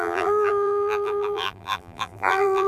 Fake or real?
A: fake